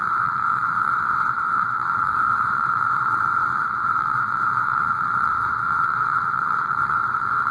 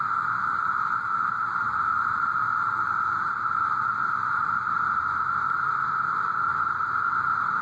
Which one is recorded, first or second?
second